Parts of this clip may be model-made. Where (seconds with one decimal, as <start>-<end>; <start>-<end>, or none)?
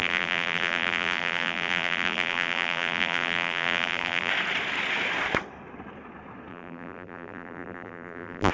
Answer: 0.0-4.3; 6.5-8.5